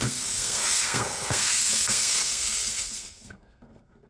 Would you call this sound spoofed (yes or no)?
yes